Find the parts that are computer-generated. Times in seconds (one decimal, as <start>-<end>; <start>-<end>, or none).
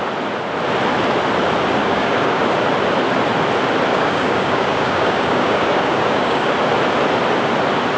1.8-2.4; 3.9-6.5